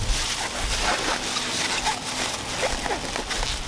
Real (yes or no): yes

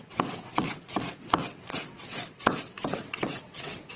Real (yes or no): no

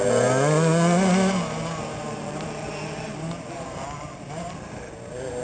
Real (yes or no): yes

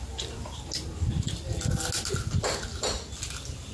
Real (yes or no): yes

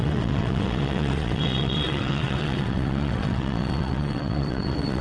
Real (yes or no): no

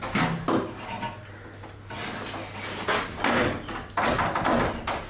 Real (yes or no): yes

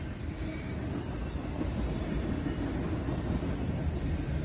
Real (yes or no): yes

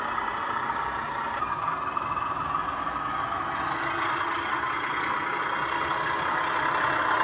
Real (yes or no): yes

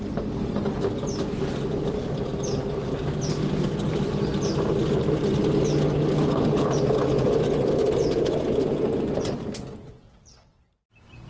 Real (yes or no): yes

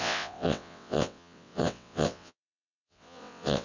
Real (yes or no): no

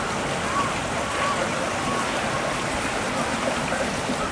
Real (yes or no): yes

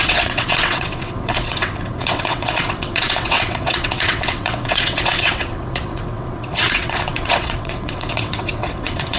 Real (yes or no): no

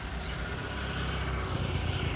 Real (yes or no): yes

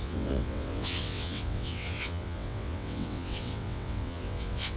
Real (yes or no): no